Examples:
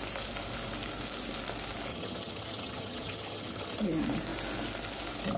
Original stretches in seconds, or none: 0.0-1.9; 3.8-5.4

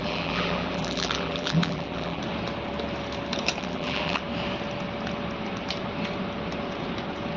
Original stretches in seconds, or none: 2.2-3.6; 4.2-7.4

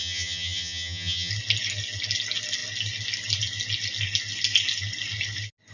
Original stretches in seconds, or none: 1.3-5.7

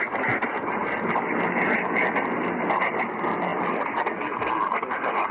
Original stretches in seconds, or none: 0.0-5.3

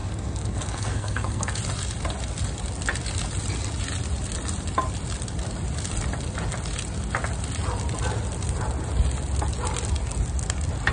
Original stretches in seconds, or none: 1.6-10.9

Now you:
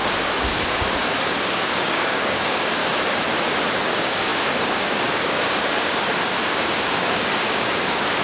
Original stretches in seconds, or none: 2.8-3.7